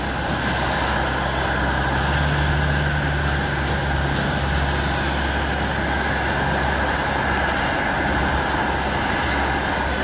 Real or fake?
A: real